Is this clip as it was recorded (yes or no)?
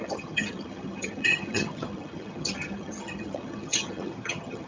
no